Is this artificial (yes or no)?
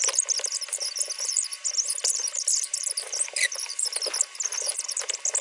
no